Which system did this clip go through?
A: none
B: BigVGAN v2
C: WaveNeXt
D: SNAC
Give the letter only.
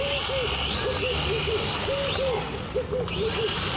B